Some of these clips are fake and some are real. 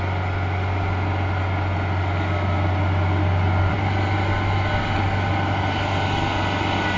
real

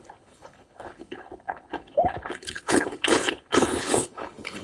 fake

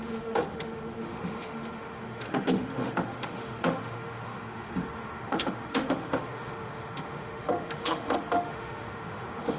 fake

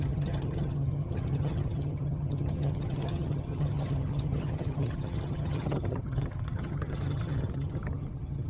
fake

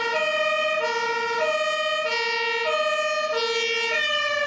real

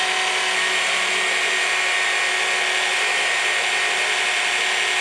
real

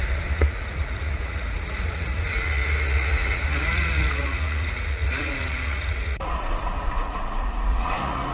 fake